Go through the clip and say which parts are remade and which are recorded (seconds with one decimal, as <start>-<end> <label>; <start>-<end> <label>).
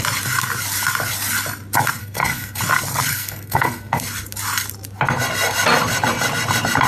0.0-2.0 recorded; 2.0-2.6 remade; 2.6-3.1 recorded; 3.1-4.0 remade; 4.0-6.9 recorded